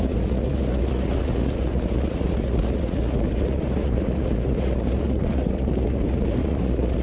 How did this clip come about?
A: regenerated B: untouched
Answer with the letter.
A